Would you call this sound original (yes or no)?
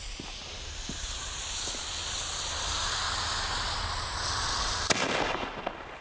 yes